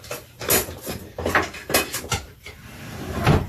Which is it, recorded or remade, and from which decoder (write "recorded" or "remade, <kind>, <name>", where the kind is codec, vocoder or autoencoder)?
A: recorded